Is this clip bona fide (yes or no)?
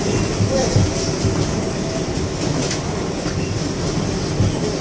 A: yes